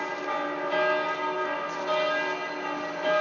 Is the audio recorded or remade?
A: recorded